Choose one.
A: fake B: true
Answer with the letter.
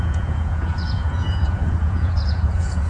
A